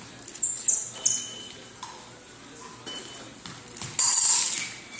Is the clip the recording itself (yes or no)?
yes